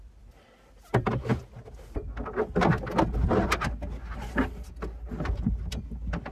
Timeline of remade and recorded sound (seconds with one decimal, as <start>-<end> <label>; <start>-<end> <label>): 0.0-6.3 recorded